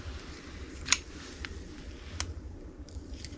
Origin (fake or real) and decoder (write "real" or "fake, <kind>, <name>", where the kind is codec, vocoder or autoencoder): real